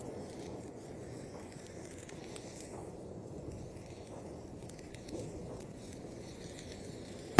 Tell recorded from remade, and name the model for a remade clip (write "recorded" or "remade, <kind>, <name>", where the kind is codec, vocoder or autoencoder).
remade, vocoder, Vocos